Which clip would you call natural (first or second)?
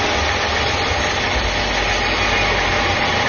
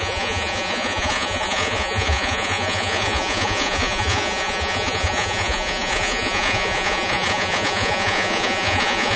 first